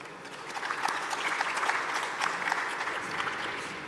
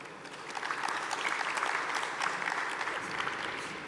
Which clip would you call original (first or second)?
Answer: second